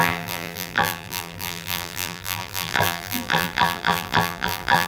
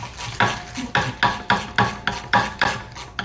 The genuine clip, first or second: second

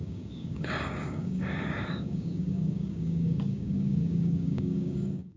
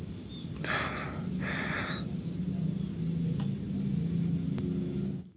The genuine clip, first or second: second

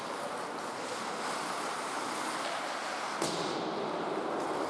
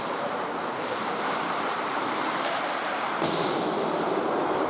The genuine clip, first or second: first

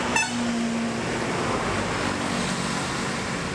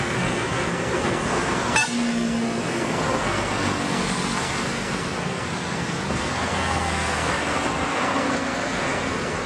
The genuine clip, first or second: first